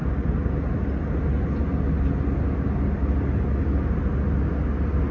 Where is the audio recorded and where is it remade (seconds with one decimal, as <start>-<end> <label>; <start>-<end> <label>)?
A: 0.0-5.1 recorded